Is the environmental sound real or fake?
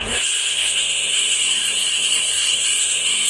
fake